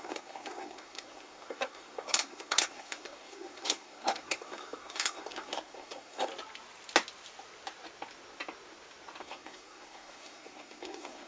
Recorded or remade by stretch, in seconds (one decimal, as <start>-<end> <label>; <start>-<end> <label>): 0.0-6.3 remade; 6.3-9.2 recorded; 9.2-11.3 remade